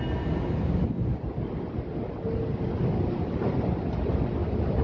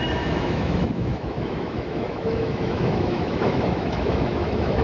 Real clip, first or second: first